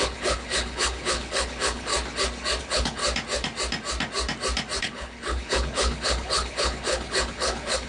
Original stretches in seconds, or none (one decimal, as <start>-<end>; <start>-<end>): 1.9-2.6; 3.0-4.8